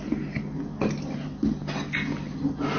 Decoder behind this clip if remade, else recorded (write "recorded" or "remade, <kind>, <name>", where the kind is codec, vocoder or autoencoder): recorded